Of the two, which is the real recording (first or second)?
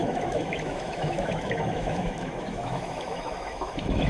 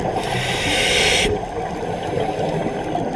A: second